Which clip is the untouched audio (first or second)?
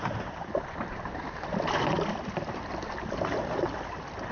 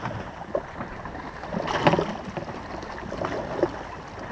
second